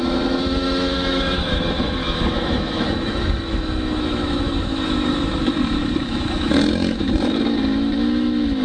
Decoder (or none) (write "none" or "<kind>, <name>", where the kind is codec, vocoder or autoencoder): autoencoder, DAC-VAE